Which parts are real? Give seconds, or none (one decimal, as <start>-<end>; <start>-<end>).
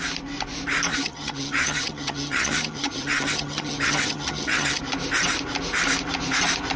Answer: 0.0-0.9; 4.8-6.8